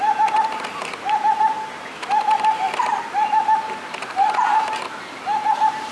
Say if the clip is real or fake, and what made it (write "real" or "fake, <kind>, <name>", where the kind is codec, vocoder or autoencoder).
real